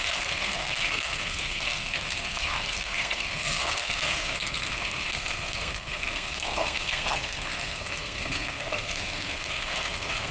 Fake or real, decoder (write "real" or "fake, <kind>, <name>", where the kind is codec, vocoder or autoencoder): fake, codec, SNAC